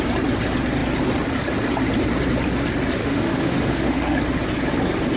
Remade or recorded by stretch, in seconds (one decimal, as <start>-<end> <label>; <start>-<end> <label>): 0.0-3.0 recorded; 3.0-4.2 remade; 4.2-5.2 recorded